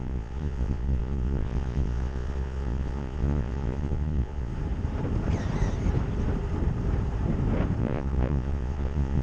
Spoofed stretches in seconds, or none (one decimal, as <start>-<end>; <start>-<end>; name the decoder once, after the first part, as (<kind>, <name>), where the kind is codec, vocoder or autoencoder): 0.0-4.5 (vocoder, Vocos); 7.8-9.2